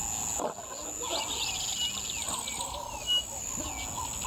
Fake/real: real